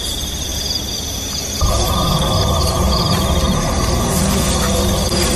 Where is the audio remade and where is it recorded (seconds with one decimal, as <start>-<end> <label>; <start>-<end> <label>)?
0.0-0.5 recorded; 0.5-3.7 remade; 3.7-5.4 recorded